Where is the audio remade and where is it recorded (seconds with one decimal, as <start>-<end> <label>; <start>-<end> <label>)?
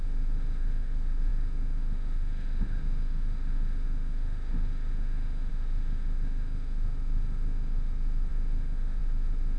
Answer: 0.0-9.6 remade